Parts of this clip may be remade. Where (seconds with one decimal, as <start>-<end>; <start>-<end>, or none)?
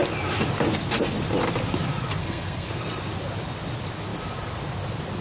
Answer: 2.2-2.7